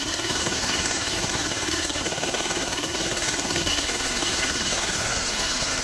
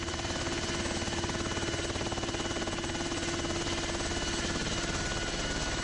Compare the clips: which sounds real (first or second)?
second